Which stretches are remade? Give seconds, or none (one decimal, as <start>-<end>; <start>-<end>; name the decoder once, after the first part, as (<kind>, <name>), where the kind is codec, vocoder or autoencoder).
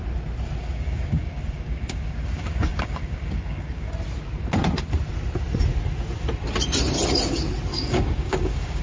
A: 0.6-3.9 (codec, DAC); 7.7-8.8